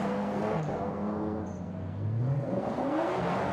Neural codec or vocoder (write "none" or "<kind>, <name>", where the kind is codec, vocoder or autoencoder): codec, SNAC